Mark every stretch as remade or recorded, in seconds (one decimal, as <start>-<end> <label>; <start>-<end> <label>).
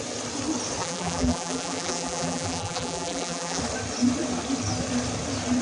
0.0-0.8 recorded; 0.8-3.6 remade; 3.6-5.6 recorded